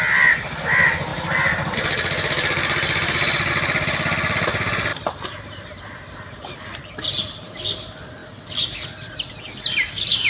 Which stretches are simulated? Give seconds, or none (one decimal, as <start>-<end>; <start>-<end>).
4.9-6.9